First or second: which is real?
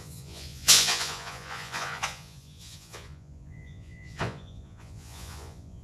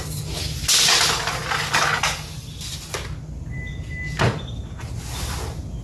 second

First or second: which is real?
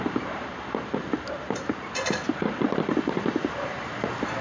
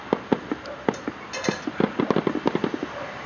second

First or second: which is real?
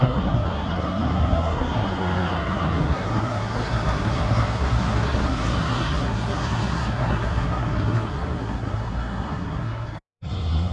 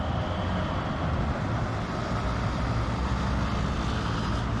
second